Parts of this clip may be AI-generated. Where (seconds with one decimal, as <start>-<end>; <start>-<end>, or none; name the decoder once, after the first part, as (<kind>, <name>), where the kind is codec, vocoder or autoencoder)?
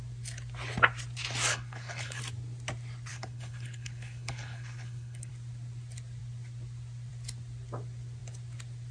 1.5-2.2 (codec, HILCodec); 3.1-5.3